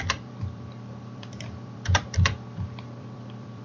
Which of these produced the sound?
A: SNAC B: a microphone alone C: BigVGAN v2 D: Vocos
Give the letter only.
C